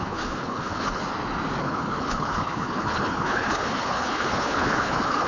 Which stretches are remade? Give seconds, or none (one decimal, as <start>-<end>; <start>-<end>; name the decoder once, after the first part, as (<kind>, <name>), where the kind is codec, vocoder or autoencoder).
0.0-1.0 (codec, HILCodec); 1.6-5.3